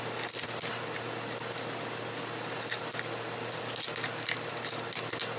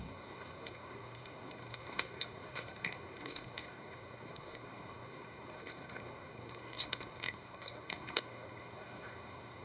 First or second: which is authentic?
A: first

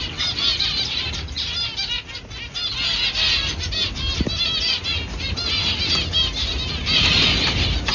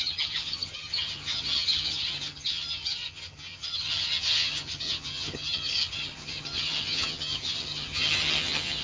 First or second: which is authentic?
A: first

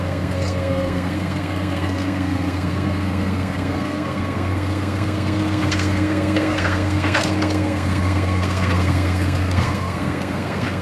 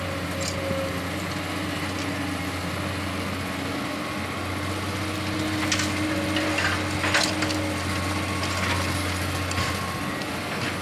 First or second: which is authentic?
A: second